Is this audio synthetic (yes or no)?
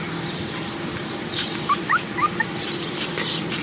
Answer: yes